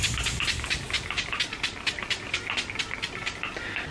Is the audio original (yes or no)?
yes